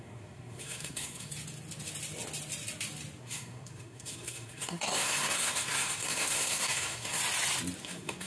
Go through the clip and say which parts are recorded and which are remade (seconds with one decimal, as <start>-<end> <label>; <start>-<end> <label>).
0.0-1.3 remade; 1.3-3.2 recorded; 3.2-7.2 remade; 7.2-7.8 recorded; 7.8-8.3 remade